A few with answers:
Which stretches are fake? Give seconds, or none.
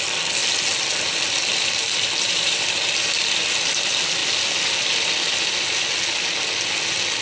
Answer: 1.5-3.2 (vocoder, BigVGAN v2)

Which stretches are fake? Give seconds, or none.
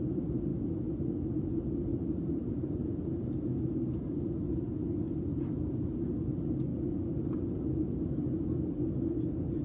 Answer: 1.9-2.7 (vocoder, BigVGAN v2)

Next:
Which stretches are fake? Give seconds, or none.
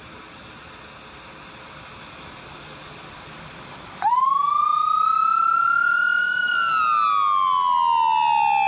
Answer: 4.7-6.8 (vocoder, BigVGAN v2)